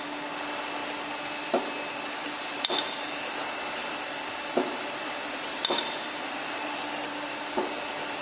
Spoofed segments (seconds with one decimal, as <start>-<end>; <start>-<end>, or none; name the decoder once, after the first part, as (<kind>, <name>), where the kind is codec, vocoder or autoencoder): none